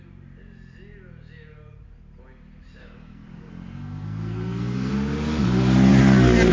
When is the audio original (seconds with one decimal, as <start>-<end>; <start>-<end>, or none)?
0.0-2.8; 4.9-6.5